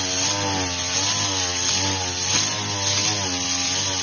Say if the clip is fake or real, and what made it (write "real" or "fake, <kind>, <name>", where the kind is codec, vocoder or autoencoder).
real